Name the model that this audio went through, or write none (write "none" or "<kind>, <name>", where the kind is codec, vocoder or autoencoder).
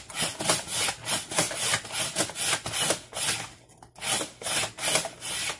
none